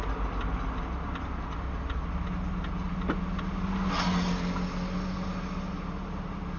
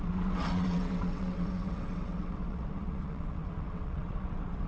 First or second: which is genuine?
first